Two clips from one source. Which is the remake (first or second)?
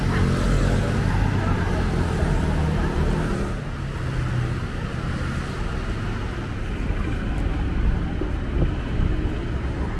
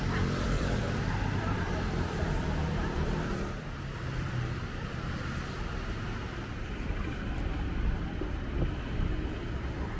second